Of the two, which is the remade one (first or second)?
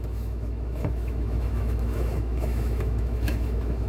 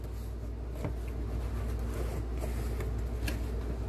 first